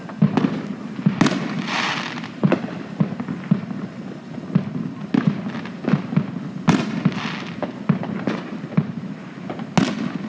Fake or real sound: real